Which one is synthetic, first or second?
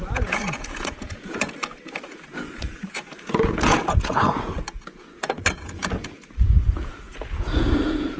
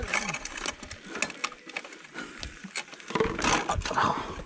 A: first